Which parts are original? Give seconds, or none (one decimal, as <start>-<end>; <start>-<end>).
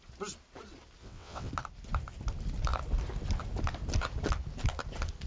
0.0-1.0; 1.5-5.3